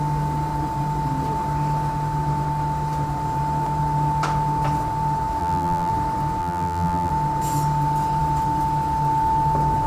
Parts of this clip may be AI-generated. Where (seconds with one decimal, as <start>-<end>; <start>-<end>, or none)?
5.4-5.9; 6.4-7.1